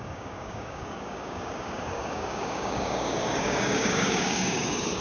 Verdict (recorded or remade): remade